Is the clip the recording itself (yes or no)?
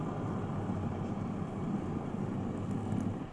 yes